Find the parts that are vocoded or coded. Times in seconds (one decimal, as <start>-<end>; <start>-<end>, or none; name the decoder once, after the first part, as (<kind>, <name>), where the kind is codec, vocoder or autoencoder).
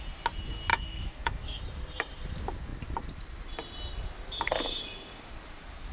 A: 0.7-1.6 (autoencoder, DAC-VAE)